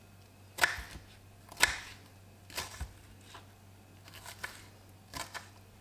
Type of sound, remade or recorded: recorded